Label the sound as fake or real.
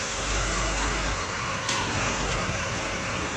fake